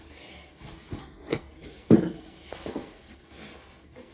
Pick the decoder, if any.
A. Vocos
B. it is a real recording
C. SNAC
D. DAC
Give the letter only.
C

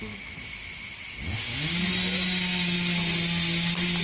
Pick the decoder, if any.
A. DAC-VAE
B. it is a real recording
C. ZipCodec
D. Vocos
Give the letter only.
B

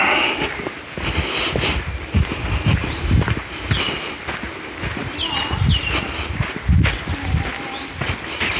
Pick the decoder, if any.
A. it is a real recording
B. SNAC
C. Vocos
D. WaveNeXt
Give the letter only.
A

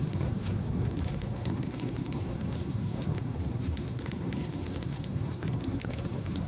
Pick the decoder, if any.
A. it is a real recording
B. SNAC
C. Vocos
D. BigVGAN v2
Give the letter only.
B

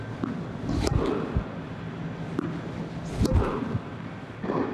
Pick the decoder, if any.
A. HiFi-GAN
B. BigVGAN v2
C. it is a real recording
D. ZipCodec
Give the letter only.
C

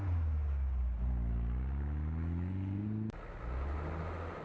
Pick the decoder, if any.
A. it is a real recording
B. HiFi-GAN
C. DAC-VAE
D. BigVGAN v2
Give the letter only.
A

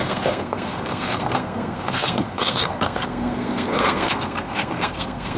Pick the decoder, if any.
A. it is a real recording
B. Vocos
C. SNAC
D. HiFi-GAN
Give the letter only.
C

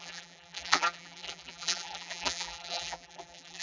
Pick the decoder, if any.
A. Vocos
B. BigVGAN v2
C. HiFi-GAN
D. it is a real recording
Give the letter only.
B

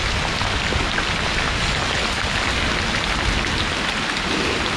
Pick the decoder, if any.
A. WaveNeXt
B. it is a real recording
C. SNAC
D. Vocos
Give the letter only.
B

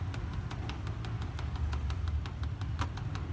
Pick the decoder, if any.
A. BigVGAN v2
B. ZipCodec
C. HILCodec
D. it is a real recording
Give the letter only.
D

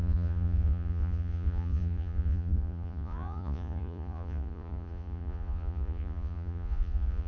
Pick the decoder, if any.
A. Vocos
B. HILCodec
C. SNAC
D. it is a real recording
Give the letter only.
A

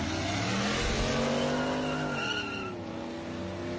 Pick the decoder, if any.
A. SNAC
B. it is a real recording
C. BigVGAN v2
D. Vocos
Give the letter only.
B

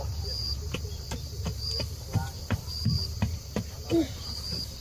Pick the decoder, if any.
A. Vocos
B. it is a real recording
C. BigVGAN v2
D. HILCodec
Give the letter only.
C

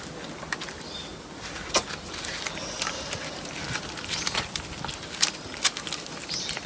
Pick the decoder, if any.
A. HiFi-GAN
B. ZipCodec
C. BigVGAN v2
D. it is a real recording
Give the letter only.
D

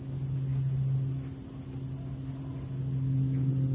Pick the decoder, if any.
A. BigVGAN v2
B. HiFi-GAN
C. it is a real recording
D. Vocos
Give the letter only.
C